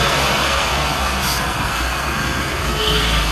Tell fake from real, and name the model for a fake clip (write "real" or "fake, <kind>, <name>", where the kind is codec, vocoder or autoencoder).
fake, codec, SNAC